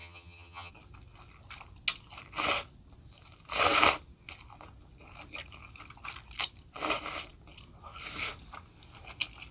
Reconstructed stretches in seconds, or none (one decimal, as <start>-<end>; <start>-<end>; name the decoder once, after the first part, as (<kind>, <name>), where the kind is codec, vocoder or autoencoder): 0.0-0.7 (vocoder, HiFi-GAN)